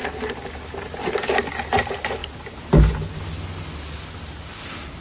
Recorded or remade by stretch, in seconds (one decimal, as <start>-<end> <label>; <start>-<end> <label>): 0.0-5.0 recorded